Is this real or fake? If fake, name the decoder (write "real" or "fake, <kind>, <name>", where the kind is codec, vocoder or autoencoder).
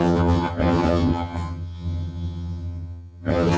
fake, vocoder, HiFi-GAN